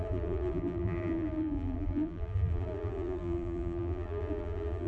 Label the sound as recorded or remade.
remade